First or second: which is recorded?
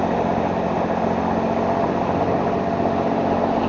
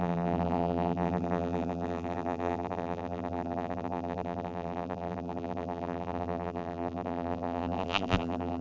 first